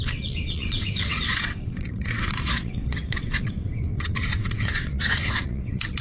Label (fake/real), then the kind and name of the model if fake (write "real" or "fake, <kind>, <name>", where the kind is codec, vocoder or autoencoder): fake, vocoder, WaveNeXt